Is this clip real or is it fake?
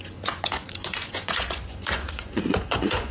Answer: fake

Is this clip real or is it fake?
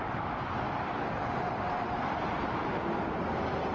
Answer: real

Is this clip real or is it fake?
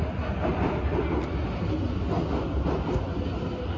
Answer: real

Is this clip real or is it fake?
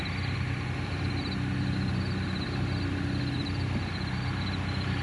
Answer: real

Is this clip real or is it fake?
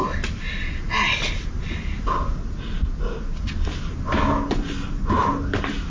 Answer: real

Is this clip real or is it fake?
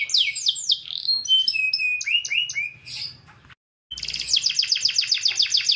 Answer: real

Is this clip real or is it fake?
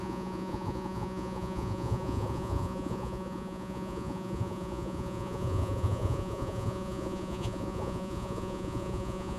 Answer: fake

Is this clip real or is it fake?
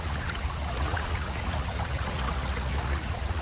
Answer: fake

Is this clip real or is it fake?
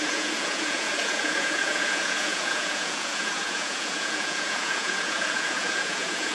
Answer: fake